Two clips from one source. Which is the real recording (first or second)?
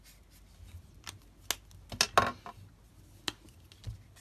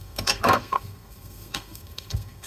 first